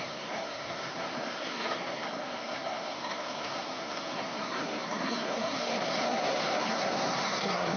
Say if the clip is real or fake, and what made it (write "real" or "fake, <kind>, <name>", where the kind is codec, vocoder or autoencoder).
fake, codec, SNAC